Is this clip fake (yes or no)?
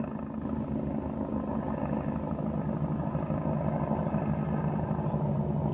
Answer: no